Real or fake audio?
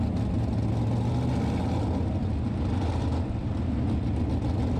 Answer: real